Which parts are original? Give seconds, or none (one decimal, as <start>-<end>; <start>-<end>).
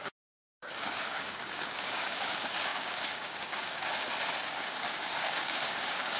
3.9-4.4